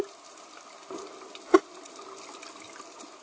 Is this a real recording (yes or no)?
yes